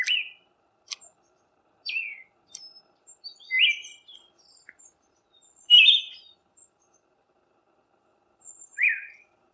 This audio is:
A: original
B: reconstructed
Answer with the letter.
A